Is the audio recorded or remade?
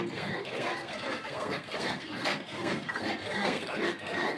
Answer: remade